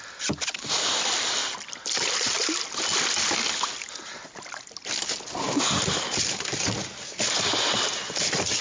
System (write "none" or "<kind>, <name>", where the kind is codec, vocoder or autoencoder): none